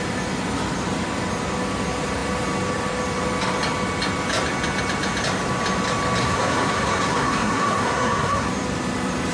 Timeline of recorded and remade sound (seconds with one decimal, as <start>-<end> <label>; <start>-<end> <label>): 0.0-6.2 recorded; 6.2-8.5 remade; 8.5-9.3 recorded